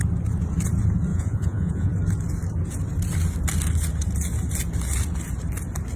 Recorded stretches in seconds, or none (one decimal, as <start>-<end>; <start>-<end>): 0.0-1.1; 1.9-6.0